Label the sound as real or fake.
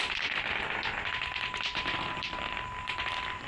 fake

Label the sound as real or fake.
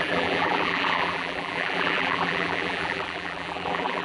fake